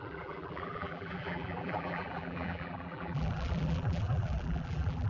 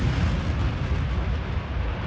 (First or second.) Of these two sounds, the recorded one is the second